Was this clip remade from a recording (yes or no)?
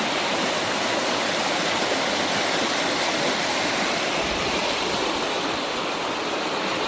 no